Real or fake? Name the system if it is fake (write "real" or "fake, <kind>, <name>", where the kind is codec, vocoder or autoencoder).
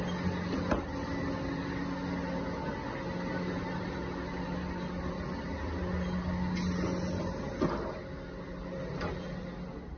real